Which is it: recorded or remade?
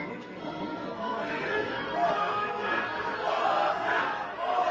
remade